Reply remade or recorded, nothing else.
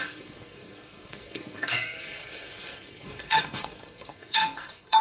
remade